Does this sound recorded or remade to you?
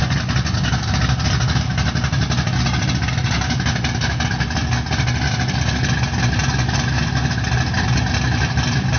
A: recorded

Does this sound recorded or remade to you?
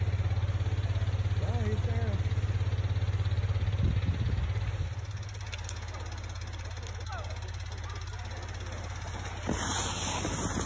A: recorded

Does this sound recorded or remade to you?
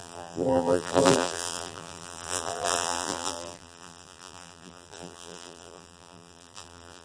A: remade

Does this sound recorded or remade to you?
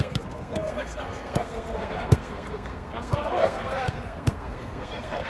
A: remade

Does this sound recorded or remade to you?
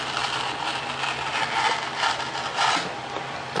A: recorded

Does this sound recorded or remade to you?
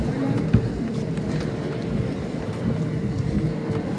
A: recorded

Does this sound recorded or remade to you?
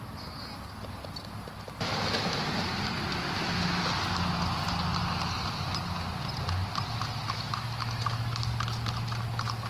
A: recorded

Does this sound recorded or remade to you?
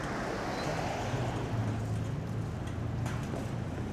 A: recorded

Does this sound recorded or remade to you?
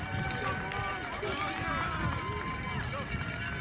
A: recorded